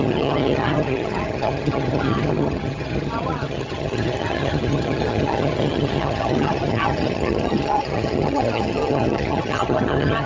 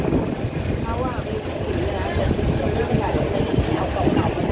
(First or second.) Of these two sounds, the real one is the second